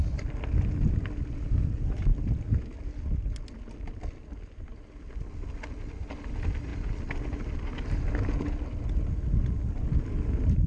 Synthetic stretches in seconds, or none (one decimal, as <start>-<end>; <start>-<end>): none